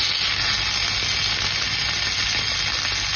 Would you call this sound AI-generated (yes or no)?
no